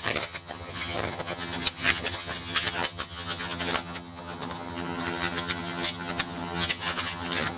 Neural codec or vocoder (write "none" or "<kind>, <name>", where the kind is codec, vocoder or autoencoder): vocoder, HiFi-GAN